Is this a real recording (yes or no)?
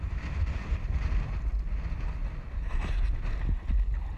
yes